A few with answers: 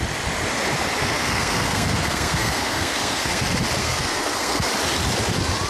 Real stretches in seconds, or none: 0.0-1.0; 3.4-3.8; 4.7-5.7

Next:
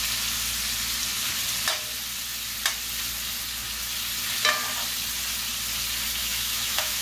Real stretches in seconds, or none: 0.0-6.2

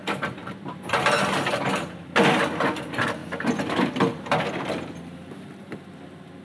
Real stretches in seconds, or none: 0.0-0.4; 1.6-3.2; 4.2-6.4

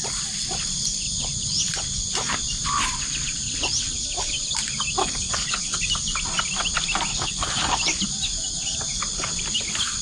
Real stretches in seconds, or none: 0.0-5.0; 5.8-7.1; 7.8-10.0

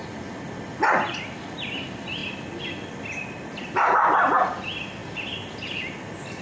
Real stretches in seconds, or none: 0.0-6.4